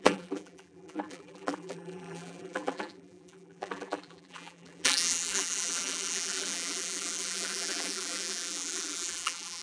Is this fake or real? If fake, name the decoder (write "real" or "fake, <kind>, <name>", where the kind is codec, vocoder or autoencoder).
fake, vocoder, BigVGAN v2